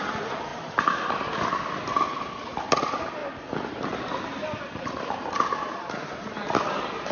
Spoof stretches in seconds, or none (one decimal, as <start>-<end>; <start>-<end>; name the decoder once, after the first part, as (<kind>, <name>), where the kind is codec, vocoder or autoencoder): none